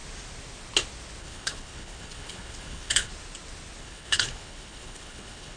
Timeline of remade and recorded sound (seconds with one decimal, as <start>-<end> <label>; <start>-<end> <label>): 0.0-1.2 recorded; 1.2-3.1 remade; 3.1-3.8 recorded; 3.8-5.6 remade